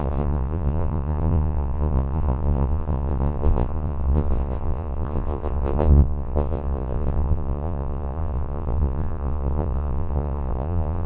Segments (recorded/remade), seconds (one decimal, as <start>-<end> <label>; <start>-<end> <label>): 0.0-11.1 remade